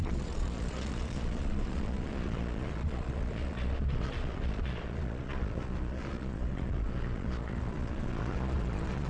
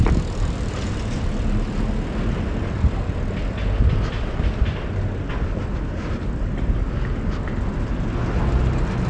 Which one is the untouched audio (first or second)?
second